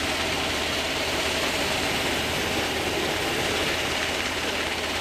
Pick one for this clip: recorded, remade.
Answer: remade